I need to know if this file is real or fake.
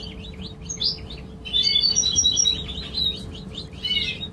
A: real